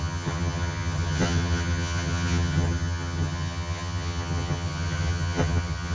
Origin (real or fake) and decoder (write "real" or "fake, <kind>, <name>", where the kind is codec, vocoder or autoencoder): fake, vocoder, HiFi-GAN